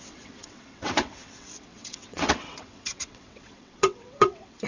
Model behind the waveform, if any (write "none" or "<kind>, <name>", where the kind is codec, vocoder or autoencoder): vocoder, WaveNeXt